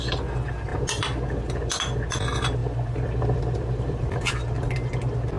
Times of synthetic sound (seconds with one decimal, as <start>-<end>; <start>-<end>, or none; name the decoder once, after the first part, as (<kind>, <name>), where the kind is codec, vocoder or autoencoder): 2.6-4.3 (vocoder, BigVGAN v2)